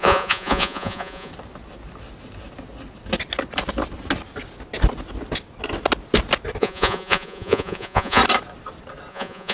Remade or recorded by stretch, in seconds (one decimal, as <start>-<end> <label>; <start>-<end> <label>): 0.0-1.3 remade; 1.3-6.6 recorded; 6.6-8.2 remade; 8.2-9.1 recorded; 9.1-9.5 remade